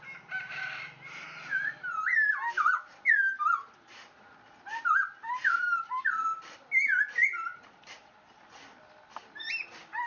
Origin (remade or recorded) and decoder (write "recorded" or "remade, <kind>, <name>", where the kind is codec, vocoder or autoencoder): recorded